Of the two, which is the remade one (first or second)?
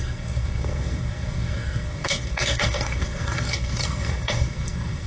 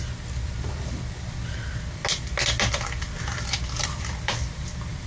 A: first